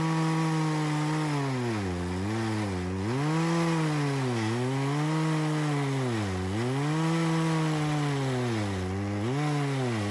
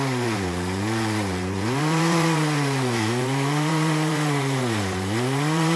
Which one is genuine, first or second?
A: first